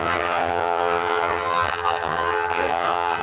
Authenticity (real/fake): fake